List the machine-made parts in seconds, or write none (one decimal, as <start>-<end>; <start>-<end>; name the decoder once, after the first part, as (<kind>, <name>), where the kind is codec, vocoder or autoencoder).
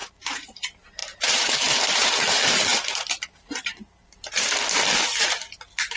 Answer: 0.0-0.6 (vocoder, BigVGAN v2); 1.0-4.6